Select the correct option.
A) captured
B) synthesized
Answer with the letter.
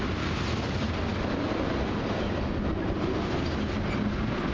A